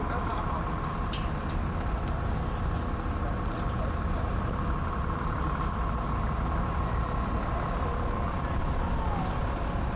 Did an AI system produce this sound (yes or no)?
no